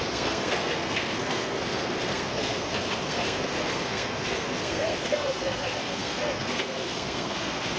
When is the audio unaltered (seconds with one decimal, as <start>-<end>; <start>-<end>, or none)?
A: none